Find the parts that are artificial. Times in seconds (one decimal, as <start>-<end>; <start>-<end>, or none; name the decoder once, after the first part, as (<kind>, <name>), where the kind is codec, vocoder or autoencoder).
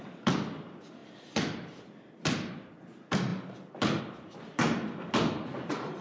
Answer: none